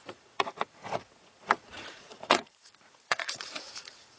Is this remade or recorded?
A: remade